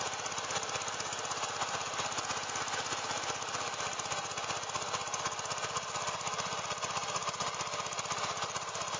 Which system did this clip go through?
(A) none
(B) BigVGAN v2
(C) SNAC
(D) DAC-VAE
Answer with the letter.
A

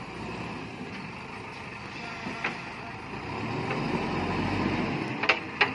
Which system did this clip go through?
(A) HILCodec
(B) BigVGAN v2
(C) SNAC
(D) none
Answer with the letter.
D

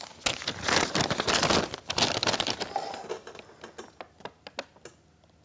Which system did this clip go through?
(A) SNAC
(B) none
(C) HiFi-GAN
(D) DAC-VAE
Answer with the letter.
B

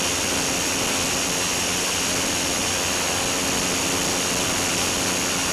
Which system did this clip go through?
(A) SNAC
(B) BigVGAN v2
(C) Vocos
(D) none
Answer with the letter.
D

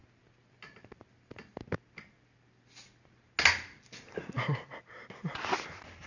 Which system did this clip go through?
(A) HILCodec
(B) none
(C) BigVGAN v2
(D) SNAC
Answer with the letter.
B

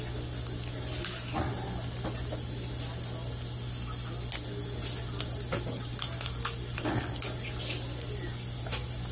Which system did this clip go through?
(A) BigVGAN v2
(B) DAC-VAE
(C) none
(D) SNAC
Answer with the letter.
C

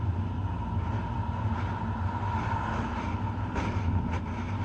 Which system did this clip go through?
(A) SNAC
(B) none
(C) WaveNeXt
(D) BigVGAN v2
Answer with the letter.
B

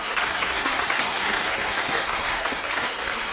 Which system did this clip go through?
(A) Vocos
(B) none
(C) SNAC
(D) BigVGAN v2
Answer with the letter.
C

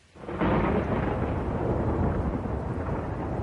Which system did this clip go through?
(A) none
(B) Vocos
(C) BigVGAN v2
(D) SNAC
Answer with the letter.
A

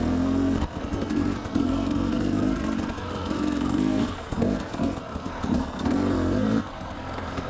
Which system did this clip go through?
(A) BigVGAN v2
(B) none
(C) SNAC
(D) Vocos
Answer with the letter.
C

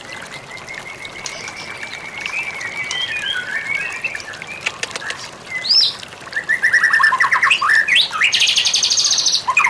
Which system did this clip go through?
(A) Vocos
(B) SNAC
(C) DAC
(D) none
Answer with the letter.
D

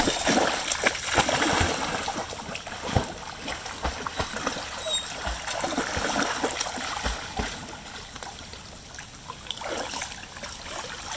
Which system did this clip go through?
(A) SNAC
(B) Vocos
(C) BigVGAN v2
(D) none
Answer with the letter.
D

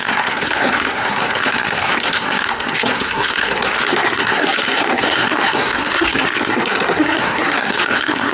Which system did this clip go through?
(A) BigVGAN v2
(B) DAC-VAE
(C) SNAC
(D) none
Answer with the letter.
C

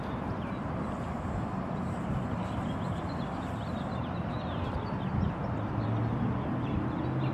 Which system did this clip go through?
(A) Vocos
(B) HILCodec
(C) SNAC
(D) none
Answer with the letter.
D